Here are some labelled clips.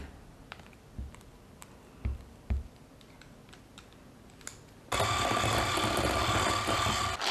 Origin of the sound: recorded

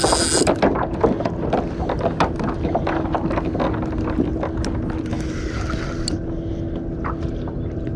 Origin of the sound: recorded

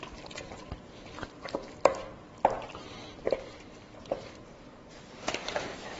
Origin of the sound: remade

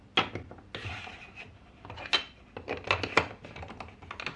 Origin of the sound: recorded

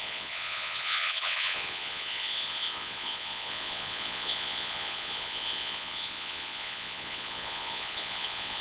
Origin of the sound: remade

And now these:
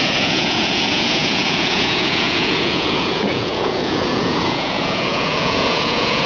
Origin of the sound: remade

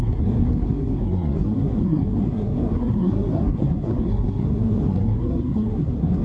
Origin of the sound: remade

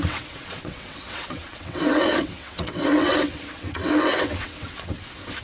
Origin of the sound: remade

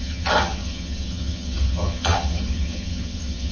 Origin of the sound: remade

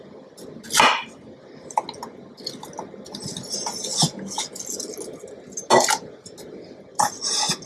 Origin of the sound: recorded